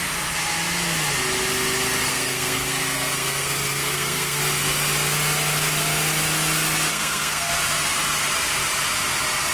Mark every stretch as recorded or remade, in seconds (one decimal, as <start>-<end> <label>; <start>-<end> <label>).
0.0-2.1 recorded; 2.1-4.4 remade; 4.4-6.9 recorded; 6.9-7.5 remade; 7.5-9.5 recorded